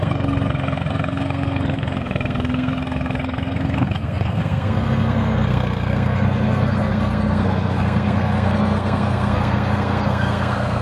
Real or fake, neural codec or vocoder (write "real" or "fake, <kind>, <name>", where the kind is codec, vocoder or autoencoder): fake, codec, SNAC